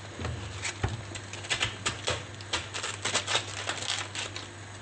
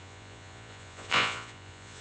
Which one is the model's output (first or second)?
second